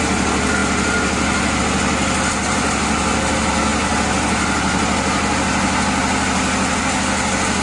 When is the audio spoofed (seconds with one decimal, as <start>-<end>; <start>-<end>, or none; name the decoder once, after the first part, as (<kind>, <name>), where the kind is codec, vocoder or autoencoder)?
none